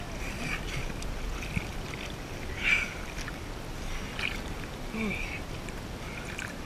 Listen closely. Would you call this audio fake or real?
real